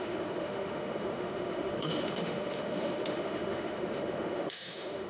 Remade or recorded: remade